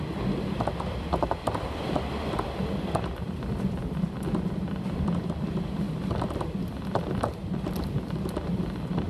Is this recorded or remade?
recorded